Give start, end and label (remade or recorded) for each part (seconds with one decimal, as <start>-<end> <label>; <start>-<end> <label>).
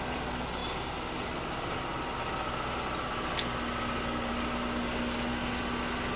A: 0.0-6.2 recorded